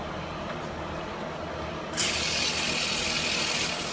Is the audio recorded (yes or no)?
yes